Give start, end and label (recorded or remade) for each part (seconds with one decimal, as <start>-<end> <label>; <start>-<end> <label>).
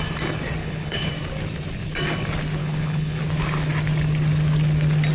0.0-0.6 recorded; 0.6-1.1 remade; 1.1-2.6 recorded; 2.6-3.2 remade; 3.2-5.1 recorded